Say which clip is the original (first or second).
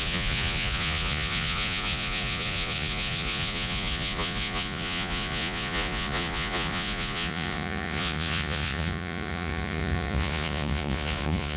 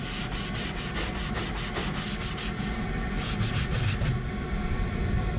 second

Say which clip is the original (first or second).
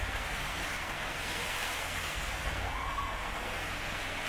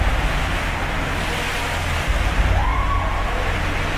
second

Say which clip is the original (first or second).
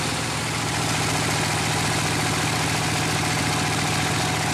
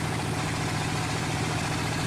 first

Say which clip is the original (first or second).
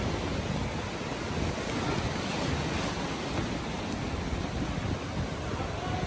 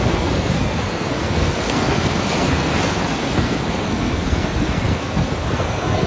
first